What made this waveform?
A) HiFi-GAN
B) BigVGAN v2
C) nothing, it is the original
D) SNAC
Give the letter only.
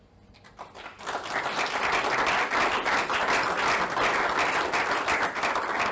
C